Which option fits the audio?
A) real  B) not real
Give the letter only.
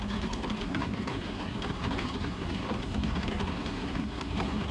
B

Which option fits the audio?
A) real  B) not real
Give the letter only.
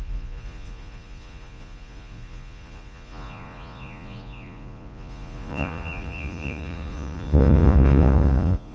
B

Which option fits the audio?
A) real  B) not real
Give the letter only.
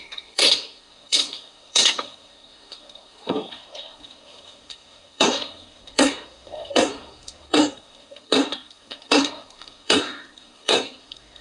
B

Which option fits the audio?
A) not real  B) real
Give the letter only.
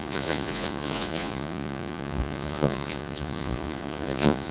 A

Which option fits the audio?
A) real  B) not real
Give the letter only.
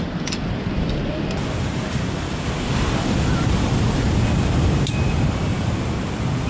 B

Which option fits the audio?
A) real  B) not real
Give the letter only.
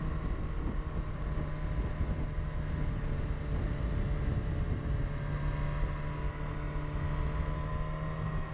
A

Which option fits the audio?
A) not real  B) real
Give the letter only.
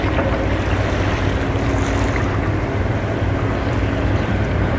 B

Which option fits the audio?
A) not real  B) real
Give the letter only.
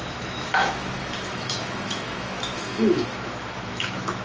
A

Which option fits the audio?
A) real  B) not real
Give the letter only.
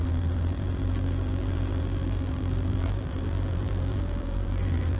B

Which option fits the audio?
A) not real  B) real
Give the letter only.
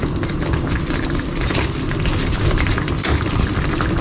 B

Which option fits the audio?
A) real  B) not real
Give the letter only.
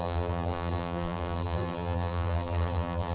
B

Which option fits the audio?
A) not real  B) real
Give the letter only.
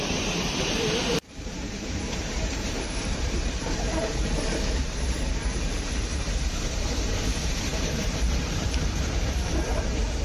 A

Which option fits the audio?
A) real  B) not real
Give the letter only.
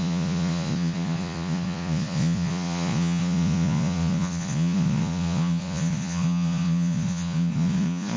B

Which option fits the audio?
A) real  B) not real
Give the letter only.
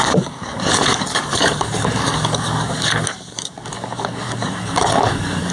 B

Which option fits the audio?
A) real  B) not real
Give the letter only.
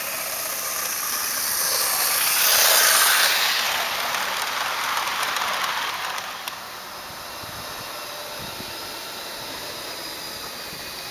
A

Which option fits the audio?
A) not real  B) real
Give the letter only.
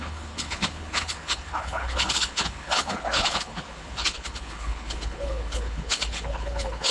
A